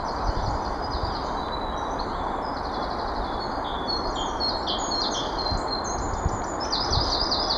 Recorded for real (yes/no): yes